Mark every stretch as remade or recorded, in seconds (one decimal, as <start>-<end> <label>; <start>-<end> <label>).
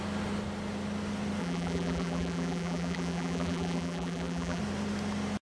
0.0-1.4 recorded; 1.4-4.6 remade; 4.6-5.4 recorded